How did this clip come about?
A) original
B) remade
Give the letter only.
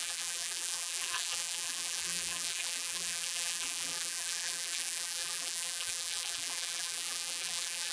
B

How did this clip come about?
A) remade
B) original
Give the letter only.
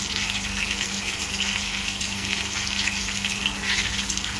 A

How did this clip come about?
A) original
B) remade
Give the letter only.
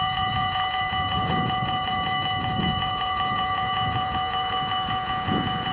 B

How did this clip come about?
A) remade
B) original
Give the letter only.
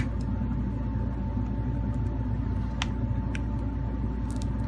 B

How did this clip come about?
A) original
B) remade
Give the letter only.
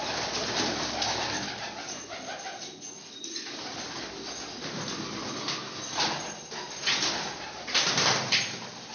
A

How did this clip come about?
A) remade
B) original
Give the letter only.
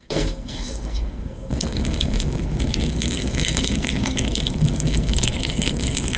A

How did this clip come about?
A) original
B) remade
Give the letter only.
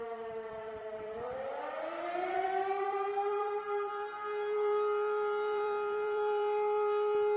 B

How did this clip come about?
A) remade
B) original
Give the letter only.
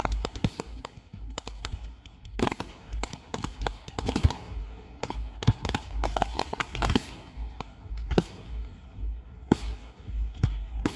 A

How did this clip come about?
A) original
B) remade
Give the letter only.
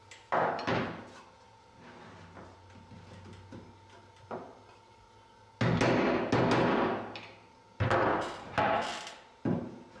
A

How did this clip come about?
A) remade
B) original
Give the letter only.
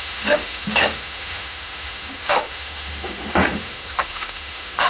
A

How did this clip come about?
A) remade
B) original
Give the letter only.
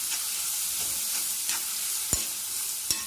B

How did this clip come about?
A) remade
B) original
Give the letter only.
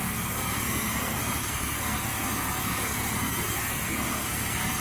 A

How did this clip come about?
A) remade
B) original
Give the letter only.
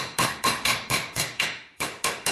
A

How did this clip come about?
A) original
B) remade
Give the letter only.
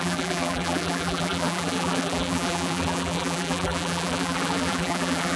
B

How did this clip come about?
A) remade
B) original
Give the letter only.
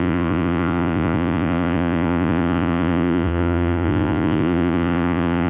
A